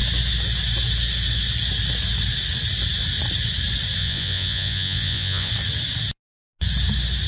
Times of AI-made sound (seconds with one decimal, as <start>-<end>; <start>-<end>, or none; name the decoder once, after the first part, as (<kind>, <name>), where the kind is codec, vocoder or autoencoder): 4.0-5.5 (vocoder, Vocos)